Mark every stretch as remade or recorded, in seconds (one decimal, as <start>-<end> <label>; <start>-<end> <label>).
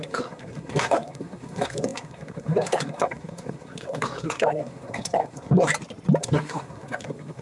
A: 0.0-5.7 remade; 5.7-6.2 recorded; 6.2-7.4 remade